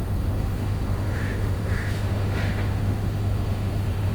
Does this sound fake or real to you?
fake